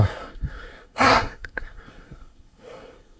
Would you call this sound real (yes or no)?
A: no